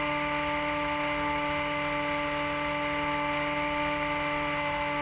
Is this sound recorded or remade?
recorded